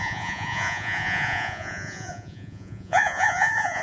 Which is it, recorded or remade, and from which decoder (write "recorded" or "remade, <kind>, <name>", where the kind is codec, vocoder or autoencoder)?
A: remade, vocoder, Vocos